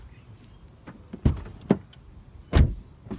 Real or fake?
real